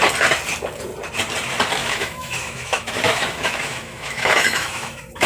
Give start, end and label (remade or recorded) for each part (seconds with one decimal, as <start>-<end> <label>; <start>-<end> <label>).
0.0-1.8 recorded; 1.8-5.3 remade